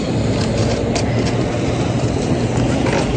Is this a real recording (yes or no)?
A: yes